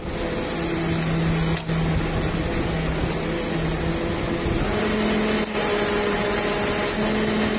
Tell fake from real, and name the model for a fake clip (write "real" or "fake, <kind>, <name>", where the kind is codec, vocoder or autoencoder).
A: real